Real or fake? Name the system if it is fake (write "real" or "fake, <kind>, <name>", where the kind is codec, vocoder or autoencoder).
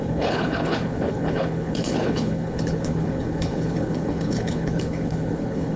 fake, codec, HILCodec